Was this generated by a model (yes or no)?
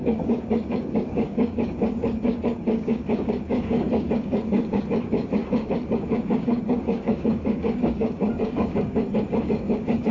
yes